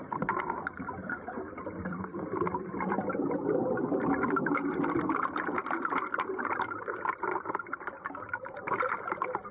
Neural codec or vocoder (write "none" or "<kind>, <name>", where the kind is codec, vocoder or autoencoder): none